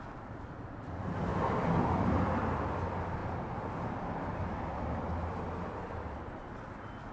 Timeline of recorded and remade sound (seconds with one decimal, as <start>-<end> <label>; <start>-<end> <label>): 0.0-3.2 remade; 3.2-4.8 recorded; 4.8-7.1 remade